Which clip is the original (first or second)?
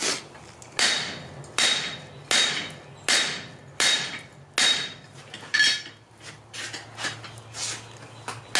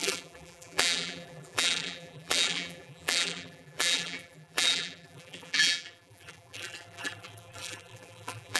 first